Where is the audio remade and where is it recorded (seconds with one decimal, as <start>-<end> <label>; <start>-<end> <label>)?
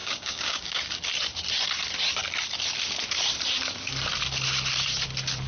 0.0-0.8 remade; 0.8-5.5 recorded